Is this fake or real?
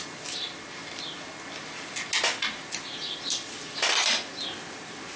real